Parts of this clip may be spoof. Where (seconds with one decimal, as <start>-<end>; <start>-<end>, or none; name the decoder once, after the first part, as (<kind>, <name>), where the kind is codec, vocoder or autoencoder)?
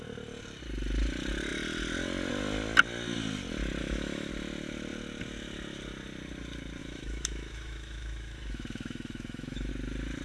3.8-4.3 (autoencoder, DAC-VAE); 6.8-9.7